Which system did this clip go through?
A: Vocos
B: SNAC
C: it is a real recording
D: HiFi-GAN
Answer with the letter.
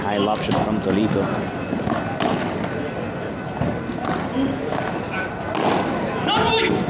C